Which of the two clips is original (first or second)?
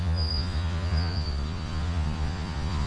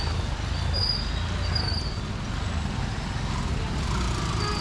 second